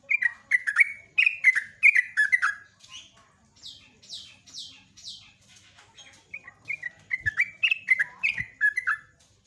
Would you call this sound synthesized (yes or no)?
no